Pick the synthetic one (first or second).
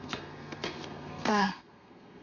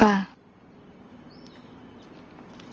first